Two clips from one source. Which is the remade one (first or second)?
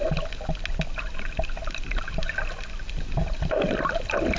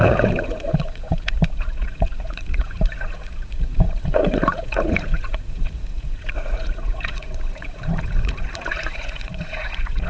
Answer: second